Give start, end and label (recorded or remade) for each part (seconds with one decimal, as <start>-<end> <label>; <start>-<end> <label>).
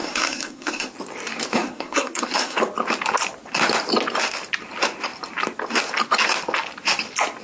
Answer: 0.0-0.9 remade; 0.9-1.5 recorded; 1.5-2.6 remade; 2.6-7.4 recorded